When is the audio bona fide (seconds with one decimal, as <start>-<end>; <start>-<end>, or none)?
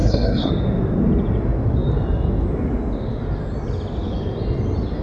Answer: 0.5-5.0